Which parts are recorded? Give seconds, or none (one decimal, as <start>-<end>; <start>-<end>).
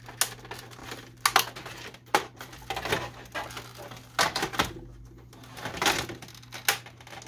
0.0-2.1; 2.6-7.3